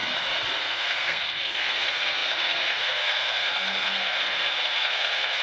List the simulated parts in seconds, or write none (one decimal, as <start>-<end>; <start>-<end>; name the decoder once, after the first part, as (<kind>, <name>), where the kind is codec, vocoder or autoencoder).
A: 0.6-5.4 (codec, SNAC)